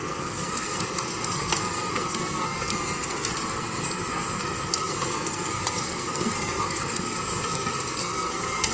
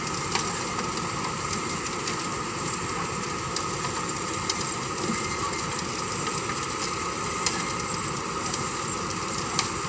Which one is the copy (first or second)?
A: first